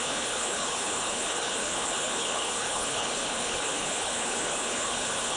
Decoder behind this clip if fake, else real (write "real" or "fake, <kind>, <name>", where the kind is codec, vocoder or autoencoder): fake, codec, HILCodec